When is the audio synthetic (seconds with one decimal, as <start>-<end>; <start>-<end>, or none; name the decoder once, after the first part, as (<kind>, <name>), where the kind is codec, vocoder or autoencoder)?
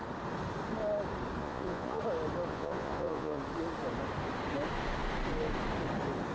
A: 1.4-2.0 (vocoder, Vocos); 2.5-3.4